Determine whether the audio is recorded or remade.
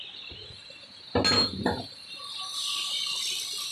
recorded